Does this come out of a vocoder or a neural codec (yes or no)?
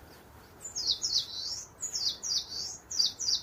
yes